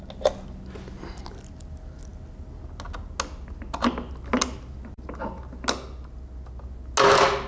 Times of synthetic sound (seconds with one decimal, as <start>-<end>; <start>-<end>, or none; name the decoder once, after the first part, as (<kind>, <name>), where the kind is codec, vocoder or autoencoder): none